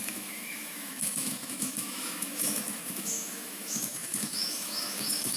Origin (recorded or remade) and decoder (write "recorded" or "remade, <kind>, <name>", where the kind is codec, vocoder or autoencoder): remade, autoencoder, DAC-VAE